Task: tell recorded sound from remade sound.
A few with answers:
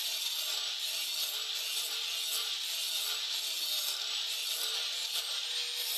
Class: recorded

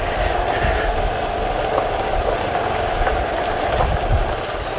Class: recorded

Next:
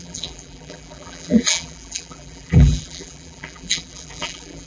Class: remade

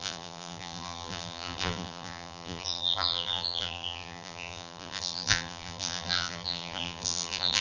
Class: remade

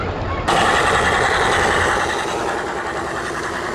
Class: recorded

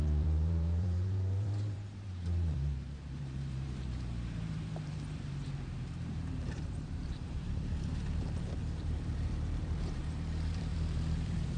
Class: remade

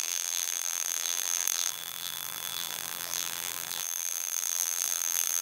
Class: remade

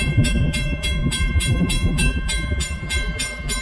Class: remade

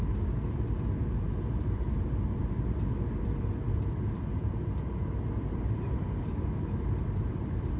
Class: recorded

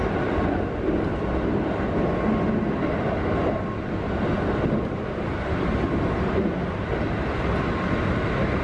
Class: recorded